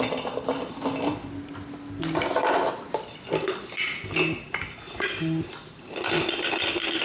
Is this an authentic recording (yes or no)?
yes